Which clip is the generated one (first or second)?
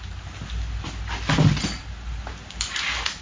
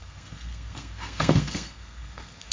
second